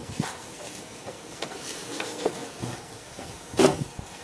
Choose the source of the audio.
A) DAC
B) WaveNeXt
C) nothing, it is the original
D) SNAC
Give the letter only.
D